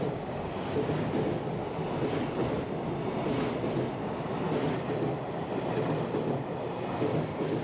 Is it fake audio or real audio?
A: real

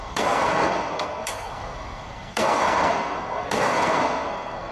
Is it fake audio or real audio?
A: fake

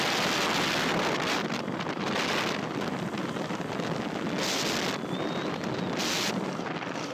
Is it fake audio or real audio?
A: real